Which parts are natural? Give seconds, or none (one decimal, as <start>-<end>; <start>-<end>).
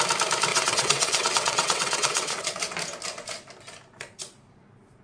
0.0-0.5; 2.6-5.0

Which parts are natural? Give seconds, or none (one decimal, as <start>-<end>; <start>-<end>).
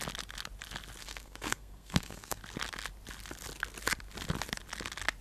0.0-1.0; 2.4-5.2